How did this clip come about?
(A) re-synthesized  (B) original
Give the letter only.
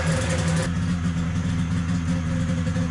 B